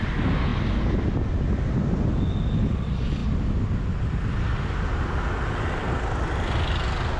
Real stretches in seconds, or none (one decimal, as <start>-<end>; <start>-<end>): 0.0-7.2